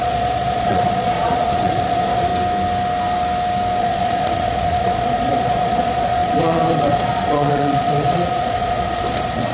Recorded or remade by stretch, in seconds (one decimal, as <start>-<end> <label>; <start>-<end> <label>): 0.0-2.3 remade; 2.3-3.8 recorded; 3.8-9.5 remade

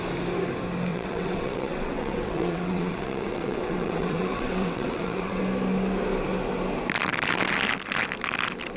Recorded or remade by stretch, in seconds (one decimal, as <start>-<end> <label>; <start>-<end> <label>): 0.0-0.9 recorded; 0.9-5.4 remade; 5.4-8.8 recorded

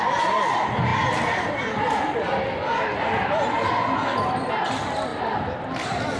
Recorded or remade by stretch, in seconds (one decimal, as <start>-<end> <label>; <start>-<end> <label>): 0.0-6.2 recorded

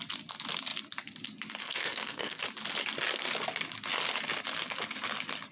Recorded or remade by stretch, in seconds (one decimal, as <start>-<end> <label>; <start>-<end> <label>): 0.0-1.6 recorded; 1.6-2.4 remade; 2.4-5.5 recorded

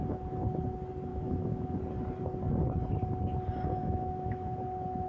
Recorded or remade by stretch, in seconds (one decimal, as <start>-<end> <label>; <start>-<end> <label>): 0.0-1.1 recorded; 1.1-1.8 remade; 1.8-3.8 recorded; 3.8-4.6 remade; 4.6-5.1 recorded

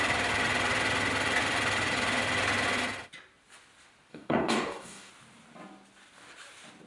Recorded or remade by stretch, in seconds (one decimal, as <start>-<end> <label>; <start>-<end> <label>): 0.0-4.1 recorded; 4.1-5.1 remade; 5.1-6.9 recorded